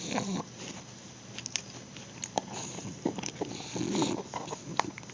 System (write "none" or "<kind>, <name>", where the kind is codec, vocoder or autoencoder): none